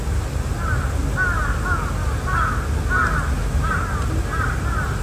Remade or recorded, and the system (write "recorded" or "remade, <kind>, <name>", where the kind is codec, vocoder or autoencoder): recorded